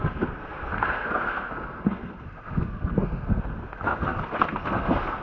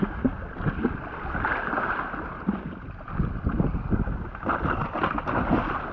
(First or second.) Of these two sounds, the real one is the second